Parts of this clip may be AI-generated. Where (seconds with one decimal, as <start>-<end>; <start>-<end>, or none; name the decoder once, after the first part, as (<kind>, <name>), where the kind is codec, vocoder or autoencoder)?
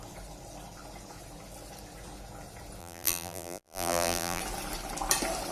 2.8-4.4 (vocoder, BigVGAN v2)